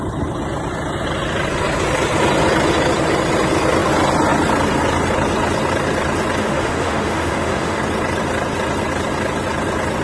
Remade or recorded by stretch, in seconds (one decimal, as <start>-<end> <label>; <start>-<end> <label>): 0.0-6.4 recorded; 6.4-7.8 remade; 7.8-10.0 recorded